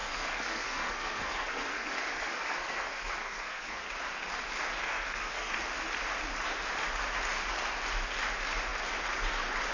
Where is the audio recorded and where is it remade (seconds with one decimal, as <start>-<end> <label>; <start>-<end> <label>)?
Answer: 0.0-3.8 remade; 3.8-4.8 recorded; 4.8-5.5 remade; 5.5-9.7 recorded